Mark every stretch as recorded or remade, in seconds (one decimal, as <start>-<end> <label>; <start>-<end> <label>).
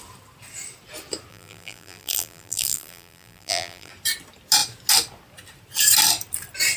0.0-1.3 recorded; 1.3-3.9 remade; 3.9-6.8 recorded